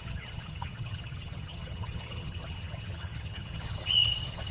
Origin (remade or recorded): remade